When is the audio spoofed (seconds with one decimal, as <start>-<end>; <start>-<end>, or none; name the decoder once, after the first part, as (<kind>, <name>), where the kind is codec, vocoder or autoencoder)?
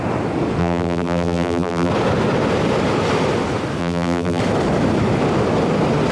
0.6-1.9 (vocoder, BigVGAN v2); 3.8-4.4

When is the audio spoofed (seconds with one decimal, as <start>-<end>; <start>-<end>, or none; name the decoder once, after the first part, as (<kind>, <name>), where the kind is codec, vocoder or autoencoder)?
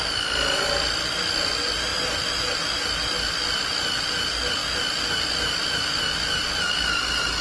none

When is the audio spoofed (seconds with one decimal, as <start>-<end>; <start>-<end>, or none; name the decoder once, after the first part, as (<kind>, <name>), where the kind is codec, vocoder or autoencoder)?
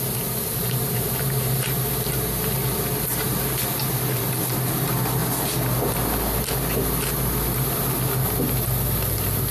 none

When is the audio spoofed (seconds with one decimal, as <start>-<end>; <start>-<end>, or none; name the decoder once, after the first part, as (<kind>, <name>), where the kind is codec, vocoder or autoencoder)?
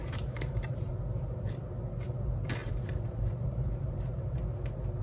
0.0-0.9 (vocoder, BigVGAN v2); 2.6-4.4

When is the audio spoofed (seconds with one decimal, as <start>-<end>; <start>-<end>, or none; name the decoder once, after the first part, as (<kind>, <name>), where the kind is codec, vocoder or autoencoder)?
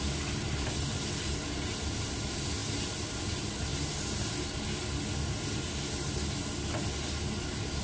none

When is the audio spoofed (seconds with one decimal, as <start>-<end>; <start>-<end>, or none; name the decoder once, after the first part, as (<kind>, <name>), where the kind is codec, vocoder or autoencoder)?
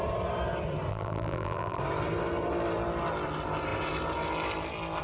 0.9-1.8 (vocoder, BigVGAN v2)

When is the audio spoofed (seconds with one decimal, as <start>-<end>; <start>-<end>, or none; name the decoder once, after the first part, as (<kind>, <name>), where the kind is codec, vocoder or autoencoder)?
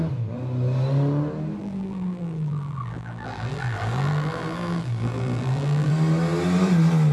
1.6-5.9 (vocoder, BigVGAN v2)